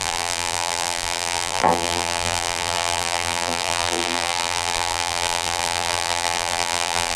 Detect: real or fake fake